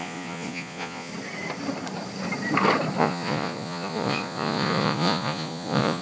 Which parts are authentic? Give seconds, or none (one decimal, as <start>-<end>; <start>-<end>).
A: 1.1-3.0